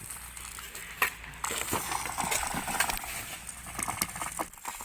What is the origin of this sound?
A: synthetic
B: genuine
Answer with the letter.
B